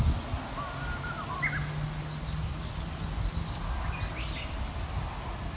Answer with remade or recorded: recorded